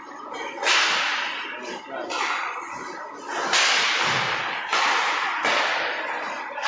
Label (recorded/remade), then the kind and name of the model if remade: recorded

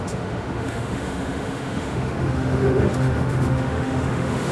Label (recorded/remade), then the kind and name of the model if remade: remade, autoencoder, DAC-VAE